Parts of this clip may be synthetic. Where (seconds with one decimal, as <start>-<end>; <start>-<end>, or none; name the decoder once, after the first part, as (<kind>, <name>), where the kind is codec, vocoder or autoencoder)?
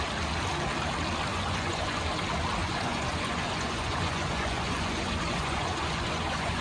1.3-2.0 (vocoder, Vocos); 2.6-6.6